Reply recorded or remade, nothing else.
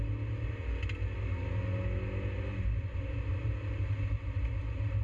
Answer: recorded